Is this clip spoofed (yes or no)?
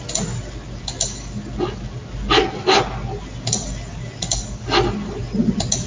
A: no